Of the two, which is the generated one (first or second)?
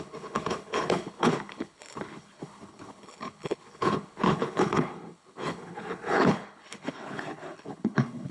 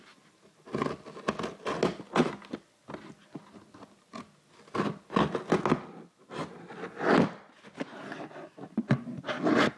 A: first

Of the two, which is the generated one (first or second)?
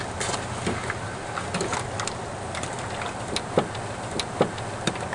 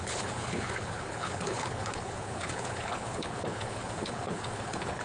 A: second